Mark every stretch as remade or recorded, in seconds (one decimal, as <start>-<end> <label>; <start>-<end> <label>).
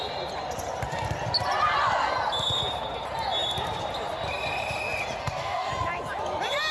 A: 0.0-5.2 recorded; 5.2-5.7 remade; 5.7-6.7 recorded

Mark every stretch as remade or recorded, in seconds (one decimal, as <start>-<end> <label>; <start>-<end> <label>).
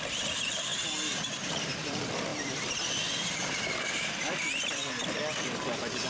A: 0.0-0.7 remade; 0.7-1.2 recorded; 1.2-4.8 remade; 4.8-6.1 recorded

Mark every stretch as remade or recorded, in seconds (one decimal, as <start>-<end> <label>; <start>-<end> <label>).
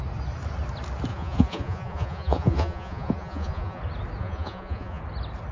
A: 0.0-1.1 recorded; 1.1-3.8 remade; 3.8-4.2 recorded; 4.2-5.0 remade; 5.0-5.5 recorded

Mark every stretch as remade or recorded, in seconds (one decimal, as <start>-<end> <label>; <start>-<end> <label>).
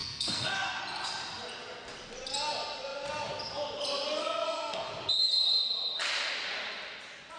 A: 0.0-0.8 remade; 0.8-4.2 recorded; 4.2-4.9 remade; 4.9-7.4 recorded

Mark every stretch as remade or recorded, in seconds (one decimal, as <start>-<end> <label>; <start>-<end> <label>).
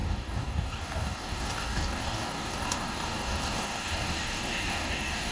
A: 0.0-5.3 remade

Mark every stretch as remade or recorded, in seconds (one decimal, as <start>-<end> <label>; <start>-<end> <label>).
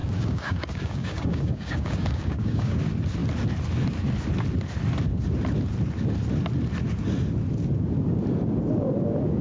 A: 0.0-2.8 remade; 2.8-9.4 recorded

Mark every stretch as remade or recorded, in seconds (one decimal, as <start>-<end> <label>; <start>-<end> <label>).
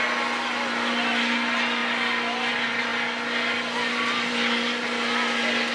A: 0.0-5.7 recorded